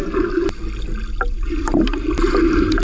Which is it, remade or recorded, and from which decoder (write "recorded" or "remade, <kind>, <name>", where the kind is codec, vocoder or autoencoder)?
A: recorded